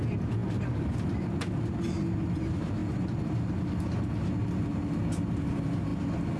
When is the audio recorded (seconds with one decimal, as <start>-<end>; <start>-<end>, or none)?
0.0-6.4